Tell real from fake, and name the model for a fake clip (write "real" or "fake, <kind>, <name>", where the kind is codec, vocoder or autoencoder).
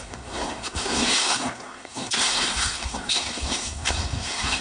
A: fake, codec, SNAC